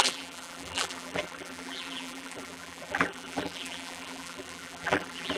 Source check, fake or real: fake